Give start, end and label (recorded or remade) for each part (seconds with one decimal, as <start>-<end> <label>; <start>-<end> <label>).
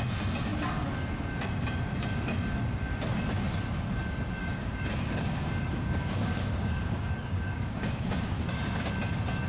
0.0-4.4 recorded; 4.4-8.4 remade; 8.4-9.5 recorded